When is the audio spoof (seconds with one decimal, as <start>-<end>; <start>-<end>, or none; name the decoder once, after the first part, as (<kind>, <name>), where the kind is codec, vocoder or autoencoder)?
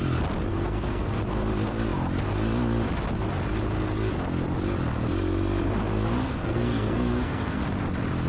0.5-1.2 (codec, SNAC); 6.2-7.6